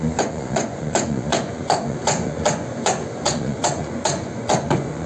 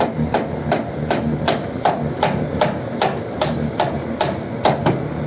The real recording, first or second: second